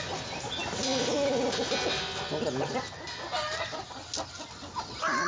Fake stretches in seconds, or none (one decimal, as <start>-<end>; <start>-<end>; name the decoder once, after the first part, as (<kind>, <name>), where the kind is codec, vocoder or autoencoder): none